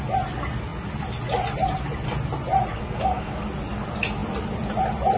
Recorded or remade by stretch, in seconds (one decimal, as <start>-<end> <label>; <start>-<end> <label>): 0.0-2.7 recorded; 2.7-3.4 remade; 3.4-5.2 recorded